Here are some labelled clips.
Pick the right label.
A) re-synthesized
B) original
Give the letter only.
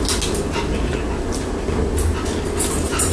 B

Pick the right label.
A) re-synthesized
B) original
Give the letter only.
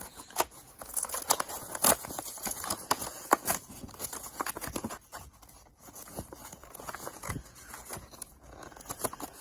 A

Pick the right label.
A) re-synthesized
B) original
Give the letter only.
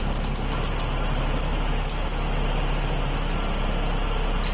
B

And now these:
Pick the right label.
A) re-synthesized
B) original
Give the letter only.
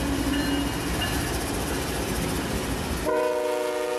B